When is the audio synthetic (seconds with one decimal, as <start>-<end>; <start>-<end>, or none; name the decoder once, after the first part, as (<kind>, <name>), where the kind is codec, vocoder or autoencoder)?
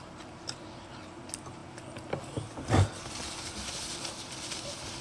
none